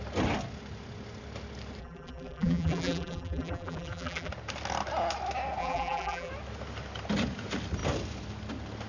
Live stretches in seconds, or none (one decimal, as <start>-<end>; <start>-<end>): 0.0-1.8; 4.3-5.6; 6.3-8.9